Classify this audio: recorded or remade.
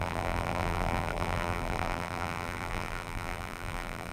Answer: remade